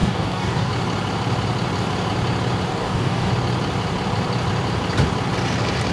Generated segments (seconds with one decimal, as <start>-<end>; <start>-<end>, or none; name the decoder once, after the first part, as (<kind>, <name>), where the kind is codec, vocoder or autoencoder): 0.0-0.7 (codec, DAC); 2.7-3.3